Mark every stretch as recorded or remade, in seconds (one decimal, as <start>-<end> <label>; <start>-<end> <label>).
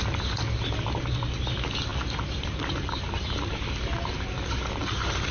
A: 0.0-5.3 recorded